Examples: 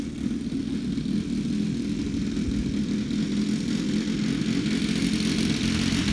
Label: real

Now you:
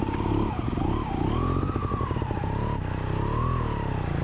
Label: real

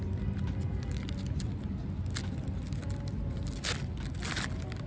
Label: real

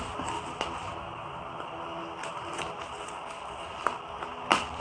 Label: real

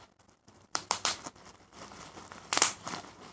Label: fake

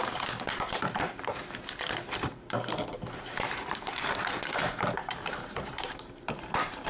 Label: fake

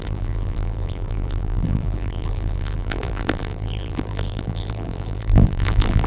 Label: fake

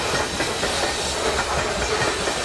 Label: real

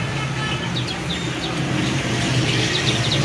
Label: real